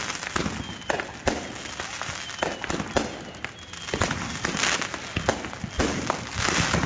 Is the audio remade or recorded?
recorded